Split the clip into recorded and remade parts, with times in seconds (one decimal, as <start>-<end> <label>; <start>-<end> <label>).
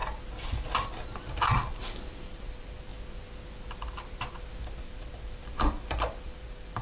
0.0-1.3 recorded; 1.3-2.9 remade; 2.9-4.6 recorded; 4.6-6.8 remade